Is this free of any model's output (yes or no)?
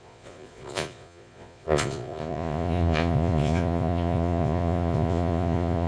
no